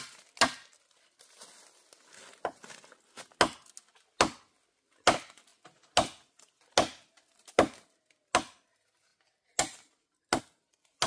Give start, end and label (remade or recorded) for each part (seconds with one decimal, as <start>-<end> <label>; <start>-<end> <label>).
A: 0.0-11.1 recorded